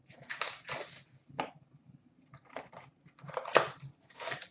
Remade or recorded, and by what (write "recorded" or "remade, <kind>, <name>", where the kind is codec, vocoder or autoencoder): remade, vocoder, BigVGAN v2